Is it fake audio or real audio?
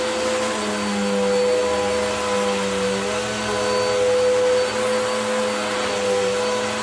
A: real